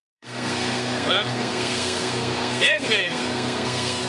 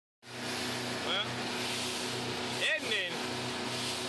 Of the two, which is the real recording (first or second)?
second